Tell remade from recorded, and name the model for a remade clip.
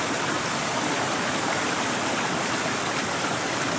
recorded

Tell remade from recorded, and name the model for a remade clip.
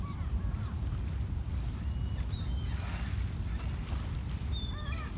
recorded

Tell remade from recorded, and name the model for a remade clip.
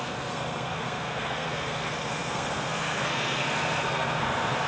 remade, codec, SNAC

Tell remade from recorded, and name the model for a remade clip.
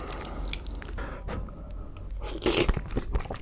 recorded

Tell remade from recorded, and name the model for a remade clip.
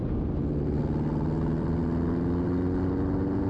recorded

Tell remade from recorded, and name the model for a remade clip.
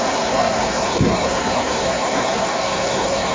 remade, codec, SNAC